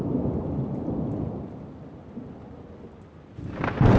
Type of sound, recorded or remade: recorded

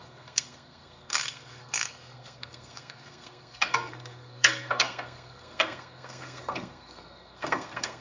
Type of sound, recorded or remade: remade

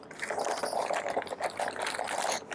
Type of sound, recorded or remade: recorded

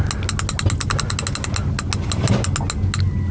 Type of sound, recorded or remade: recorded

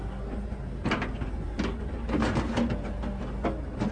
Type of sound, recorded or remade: recorded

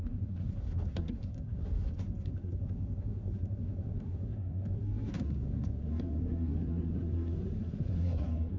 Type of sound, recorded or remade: remade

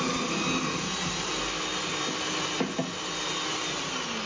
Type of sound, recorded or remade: recorded